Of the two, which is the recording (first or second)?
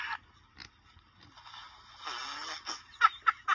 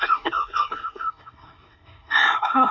first